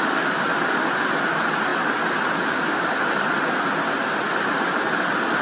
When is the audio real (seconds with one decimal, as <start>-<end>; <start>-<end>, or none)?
0.0-5.4